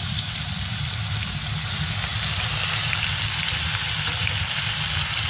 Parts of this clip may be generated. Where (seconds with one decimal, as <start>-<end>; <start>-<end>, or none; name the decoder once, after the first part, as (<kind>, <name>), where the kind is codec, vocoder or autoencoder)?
0.0-0.8 (vocoder, BigVGAN v2)